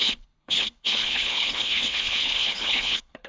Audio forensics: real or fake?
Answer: fake